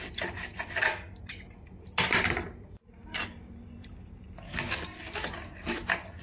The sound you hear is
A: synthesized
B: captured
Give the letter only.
B